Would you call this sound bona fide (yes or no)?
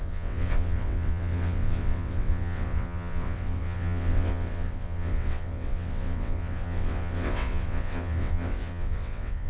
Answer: no